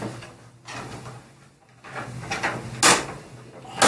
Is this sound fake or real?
real